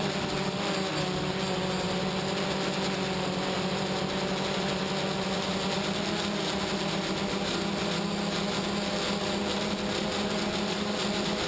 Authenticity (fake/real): real